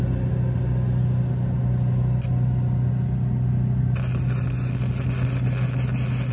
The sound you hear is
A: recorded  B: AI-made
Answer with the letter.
A